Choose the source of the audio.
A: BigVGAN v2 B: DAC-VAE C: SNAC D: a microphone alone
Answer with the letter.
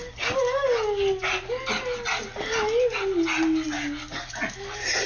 D